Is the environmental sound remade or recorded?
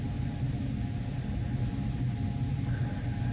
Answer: recorded